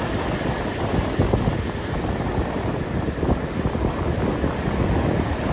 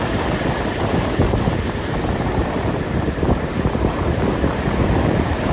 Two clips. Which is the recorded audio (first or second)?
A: first